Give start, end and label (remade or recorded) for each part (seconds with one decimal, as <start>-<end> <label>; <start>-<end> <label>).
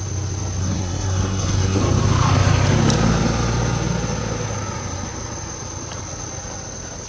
0.0-0.6 recorded; 0.6-1.8 remade; 1.8-7.1 recorded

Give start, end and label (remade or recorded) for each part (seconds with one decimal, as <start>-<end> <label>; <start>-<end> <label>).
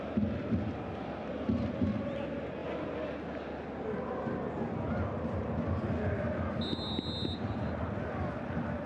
0.0-8.9 recorded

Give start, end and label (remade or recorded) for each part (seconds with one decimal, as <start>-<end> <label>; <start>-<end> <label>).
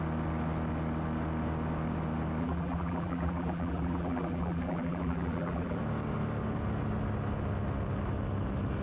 0.0-2.4 recorded; 2.4-5.8 remade; 5.8-8.8 recorded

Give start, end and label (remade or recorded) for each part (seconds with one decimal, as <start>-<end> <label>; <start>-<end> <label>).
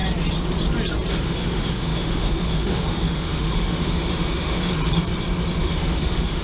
0.0-1.1 recorded; 1.1-4.7 remade; 4.7-5.6 recorded; 5.6-6.4 remade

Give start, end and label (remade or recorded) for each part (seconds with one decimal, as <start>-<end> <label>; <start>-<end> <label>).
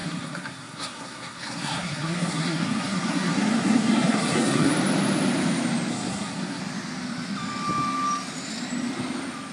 0.0-4.7 remade; 4.7-5.9 recorded; 5.9-6.6 remade; 6.6-9.5 recorded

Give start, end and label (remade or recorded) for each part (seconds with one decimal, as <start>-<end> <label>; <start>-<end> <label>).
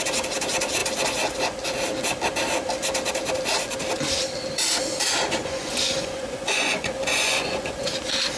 0.0-5.4 recorded; 5.4-7.9 remade; 7.9-8.4 recorded